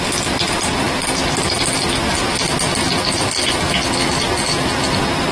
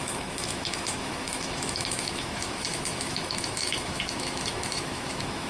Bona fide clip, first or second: first